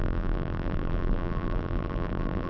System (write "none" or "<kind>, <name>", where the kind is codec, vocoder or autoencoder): vocoder, BigVGAN v2